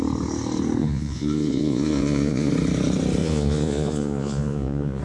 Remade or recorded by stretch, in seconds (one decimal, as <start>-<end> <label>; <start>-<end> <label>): 0.0-0.8 recorded; 0.8-2.5 remade; 2.5-3.2 recorded; 3.2-5.0 remade